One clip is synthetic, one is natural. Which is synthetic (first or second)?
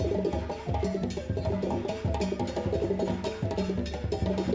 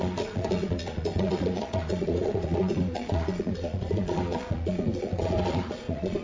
second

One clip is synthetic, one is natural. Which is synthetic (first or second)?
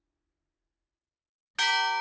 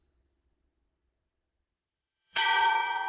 second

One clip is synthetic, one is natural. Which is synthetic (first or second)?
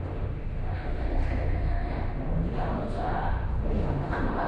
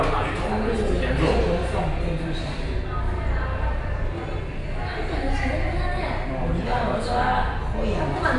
first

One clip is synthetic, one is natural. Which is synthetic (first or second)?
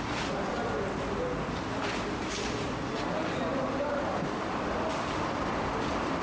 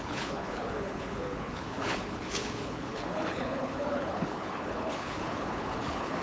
second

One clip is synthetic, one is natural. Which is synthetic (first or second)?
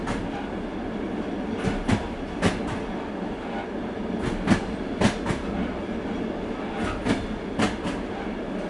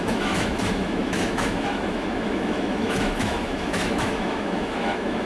second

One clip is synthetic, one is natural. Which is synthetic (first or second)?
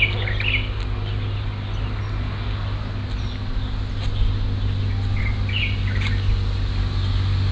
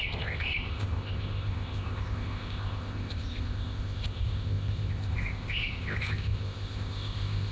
second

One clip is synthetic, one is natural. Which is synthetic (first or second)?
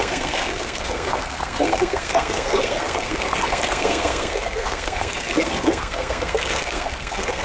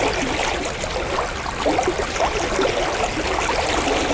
first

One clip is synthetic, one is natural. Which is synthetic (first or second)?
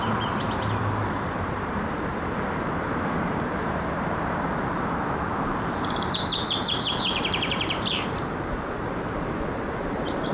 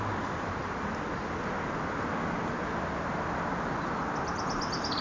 first